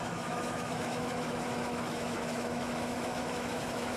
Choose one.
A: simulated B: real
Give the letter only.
A